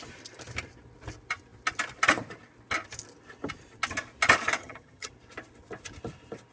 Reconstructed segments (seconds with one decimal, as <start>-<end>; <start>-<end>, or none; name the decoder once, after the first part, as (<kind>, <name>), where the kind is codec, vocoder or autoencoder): 4.6-5.1 (vocoder, HiFi-GAN)